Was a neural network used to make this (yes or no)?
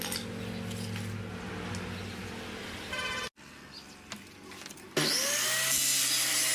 no